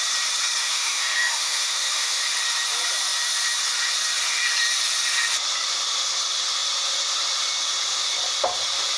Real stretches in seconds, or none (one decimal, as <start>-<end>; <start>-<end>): 0.0-0.6; 2.2-9.0